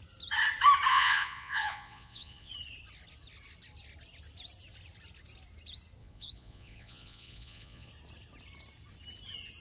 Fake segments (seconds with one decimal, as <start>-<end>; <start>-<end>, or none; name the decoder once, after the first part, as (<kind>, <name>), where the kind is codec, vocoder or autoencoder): 0.9-2.5 (vocoder, Vocos); 6.0-7.9